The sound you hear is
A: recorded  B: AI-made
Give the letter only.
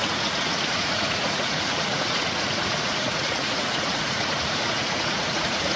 B